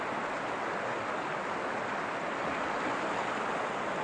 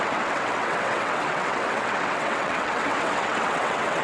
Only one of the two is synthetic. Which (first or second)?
second